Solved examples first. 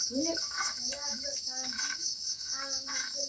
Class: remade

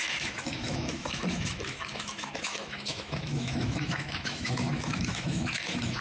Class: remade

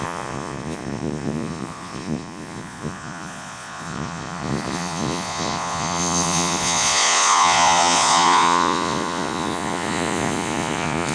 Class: remade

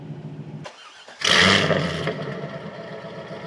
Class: recorded